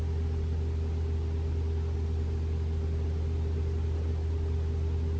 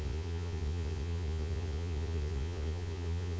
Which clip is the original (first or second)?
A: first